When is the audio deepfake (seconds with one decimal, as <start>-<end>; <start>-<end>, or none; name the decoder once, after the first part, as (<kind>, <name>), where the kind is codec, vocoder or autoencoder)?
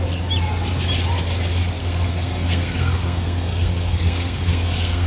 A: 1.8-5.1 (codec, SNAC)